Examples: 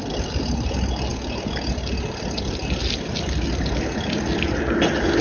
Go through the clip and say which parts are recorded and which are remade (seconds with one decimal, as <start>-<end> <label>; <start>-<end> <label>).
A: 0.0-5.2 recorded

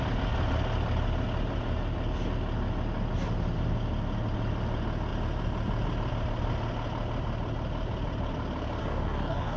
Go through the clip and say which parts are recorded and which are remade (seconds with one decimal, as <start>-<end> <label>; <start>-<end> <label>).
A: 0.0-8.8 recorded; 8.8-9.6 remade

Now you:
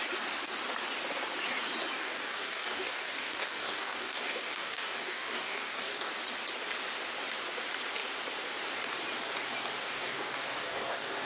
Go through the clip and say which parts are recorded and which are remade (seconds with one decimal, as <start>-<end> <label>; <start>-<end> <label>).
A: 0.0-2.0 recorded; 2.0-6.1 remade; 6.1-9.8 recorded; 9.8-11.3 remade

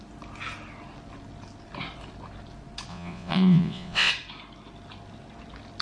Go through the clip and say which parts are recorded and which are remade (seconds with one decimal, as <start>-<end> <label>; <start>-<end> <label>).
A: 0.0-2.9 recorded; 2.9-4.1 remade; 4.1-5.8 recorded

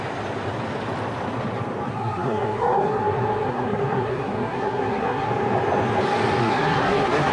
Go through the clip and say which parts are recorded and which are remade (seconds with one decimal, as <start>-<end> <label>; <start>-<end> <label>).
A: 0.0-1.9 recorded; 1.9-5.3 remade; 5.3-6.4 recorded; 6.4-7.3 remade

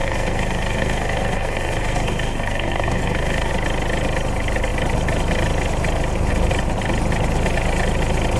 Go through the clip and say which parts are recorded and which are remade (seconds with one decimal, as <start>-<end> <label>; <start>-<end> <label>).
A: 0.0-3.5 remade; 3.5-8.4 recorded

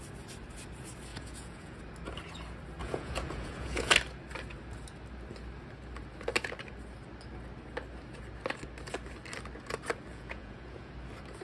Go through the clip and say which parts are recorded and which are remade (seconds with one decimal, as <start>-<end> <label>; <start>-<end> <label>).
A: 0.0-1.1 recorded; 1.1-1.8 remade; 1.8-2.8 recorded; 2.8-3.9 remade; 3.9-10.1 recorded; 10.1-10.9 remade; 10.9-11.4 recorded

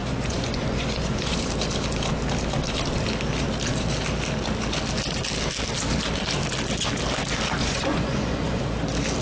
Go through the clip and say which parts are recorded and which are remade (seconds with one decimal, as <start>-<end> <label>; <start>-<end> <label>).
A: 0.0-1.5 remade; 1.5-7.6 recorded; 7.6-8.6 remade; 8.6-9.2 recorded